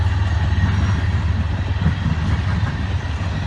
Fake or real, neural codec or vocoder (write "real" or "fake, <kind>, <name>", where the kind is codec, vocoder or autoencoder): real